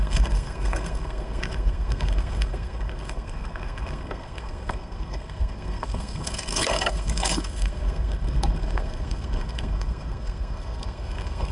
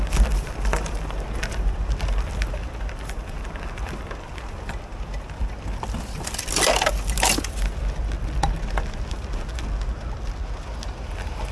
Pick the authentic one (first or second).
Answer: second